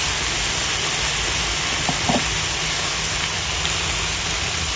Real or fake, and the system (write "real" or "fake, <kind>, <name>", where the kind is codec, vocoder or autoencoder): real